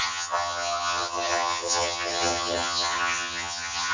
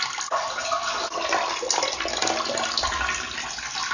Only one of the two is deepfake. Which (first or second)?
first